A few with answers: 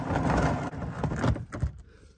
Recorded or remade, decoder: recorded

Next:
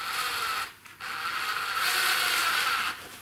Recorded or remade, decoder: recorded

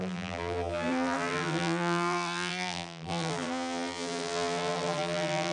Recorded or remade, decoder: remade, vocoder, BigVGAN v2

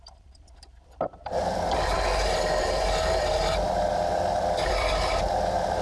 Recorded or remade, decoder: remade, vocoder, BigVGAN v2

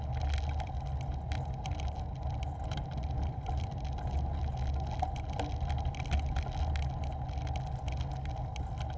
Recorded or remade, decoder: recorded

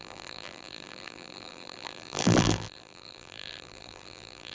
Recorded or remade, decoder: remade, vocoder, BigVGAN v2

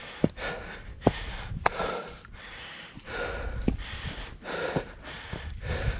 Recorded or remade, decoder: recorded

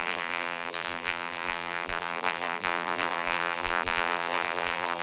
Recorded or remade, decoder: remade, vocoder, BigVGAN v2